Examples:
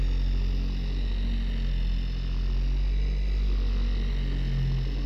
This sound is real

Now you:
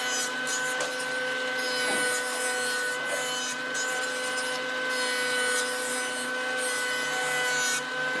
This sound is real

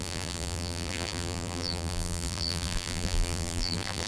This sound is fake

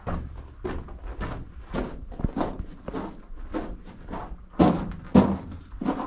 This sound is real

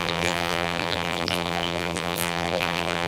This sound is fake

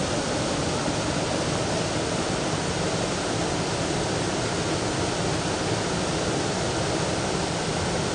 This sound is real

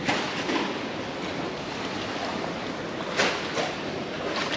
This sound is real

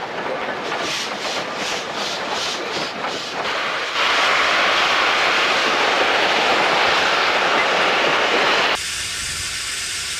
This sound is fake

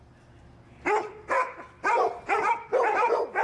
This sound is real